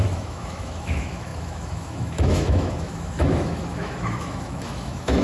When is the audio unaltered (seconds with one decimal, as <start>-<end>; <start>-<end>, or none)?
none